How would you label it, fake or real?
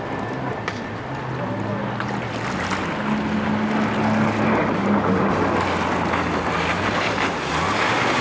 real